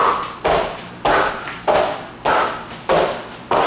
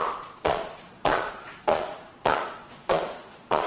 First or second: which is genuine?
first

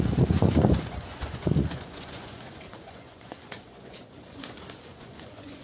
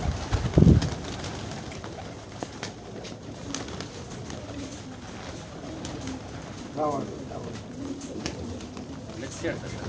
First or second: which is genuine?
second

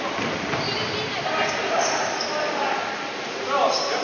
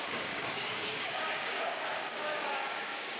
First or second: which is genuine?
first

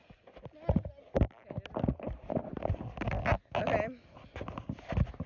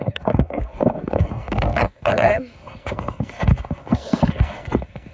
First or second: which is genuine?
first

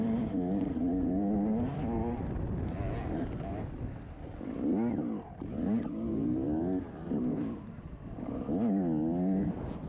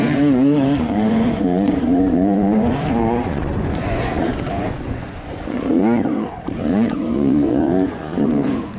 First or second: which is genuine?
first